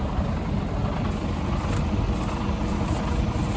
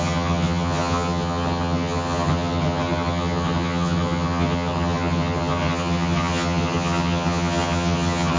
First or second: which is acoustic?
first